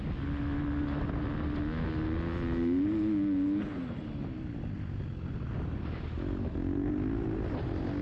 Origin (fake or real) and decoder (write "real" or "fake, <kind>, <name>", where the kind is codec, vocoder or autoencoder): real